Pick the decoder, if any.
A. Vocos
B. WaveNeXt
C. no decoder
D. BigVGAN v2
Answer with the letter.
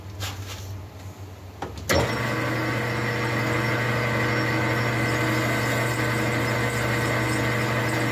C